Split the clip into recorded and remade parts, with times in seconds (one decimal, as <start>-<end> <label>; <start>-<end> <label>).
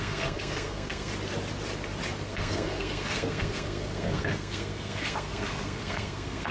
0.0-1.1 remade; 1.1-2.2 recorded; 2.2-6.5 remade